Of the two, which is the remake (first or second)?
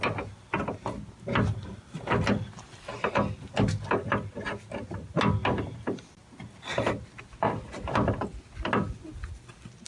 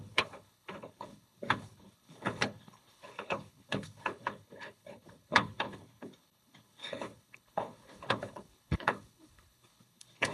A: second